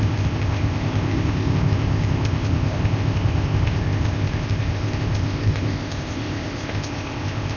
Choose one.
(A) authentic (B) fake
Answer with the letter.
B